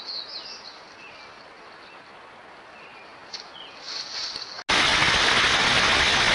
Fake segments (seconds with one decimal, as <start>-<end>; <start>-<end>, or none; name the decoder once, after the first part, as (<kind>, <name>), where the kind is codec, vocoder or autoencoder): none